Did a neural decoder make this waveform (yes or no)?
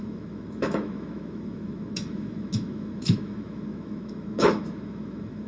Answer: yes